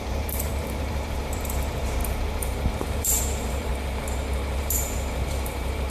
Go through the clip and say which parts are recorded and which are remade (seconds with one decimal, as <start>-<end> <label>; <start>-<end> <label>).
0.0-3.7 remade; 3.7-4.6 recorded; 4.6-5.9 remade

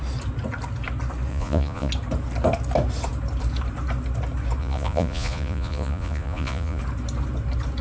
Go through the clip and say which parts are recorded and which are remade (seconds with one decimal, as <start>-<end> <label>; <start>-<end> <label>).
0.0-1.3 recorded; 1.3-1.9 remade; 1.9-4.6 recorded; 4.6-6.8 remade; 6.8-7.8 recorded

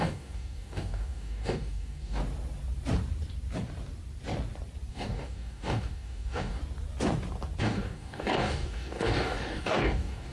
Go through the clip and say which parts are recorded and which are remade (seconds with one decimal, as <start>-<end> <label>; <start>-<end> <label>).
0.0-2.2 remade; 2.2-4.9 recorded; 4.9-6.6 remade; 6.6-7.6 recorded; 7.6-10.3 remade

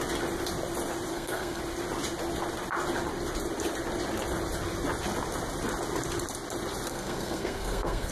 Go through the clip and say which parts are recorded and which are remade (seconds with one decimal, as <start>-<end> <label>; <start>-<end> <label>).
0.0-1.1 recorded; 1.1-1.6 remade; 1.6-6.9 recorded; 6.9-8.1 remade

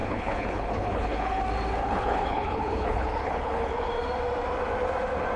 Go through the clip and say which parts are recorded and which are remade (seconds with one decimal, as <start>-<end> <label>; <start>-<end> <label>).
0.0-1.4 remade; 1.4-1.8 recorded; 1.8-3.9 remade; 3.9-5.4 recorded

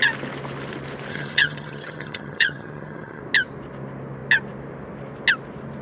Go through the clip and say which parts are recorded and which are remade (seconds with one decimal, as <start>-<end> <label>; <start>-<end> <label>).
0.0-1.1 recorded; 1.1-3.2 remade; 3.2-5.8 recorded